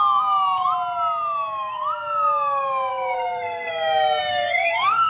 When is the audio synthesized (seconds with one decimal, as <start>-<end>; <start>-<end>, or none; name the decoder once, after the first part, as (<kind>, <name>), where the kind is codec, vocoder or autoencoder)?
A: 2.9-3.7 (codec, SNAC); 4.3-5.1